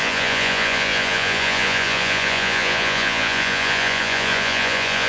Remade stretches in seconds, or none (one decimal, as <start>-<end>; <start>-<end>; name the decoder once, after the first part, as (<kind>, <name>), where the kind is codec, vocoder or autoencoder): 0.0-5.1 (vocoder, Vocos)

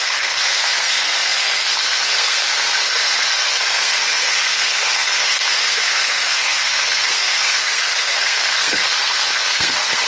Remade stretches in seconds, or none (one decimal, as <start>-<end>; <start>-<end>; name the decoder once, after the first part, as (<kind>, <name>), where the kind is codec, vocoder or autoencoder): 0.0-10.1 (codec, SNAC)

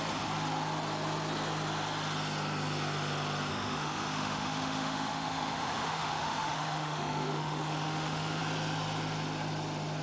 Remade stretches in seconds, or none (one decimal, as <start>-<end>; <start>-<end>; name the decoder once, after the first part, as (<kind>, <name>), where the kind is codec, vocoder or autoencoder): 3.5-8.4 (autoencoder, DAC-VAE)